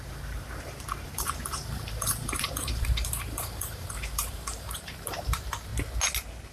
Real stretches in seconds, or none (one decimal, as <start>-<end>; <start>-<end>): 5.7-6.5